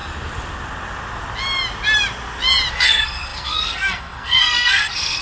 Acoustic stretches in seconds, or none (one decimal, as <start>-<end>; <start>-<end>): 0.0-2.7